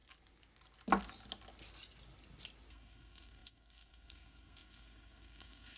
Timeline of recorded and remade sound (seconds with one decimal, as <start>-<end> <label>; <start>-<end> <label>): 0.0-2.7 recorded; 2.7-5.8 remade